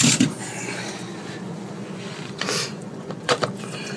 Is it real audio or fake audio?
fake